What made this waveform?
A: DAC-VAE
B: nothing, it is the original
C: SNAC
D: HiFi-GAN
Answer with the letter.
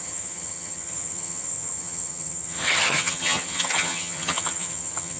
D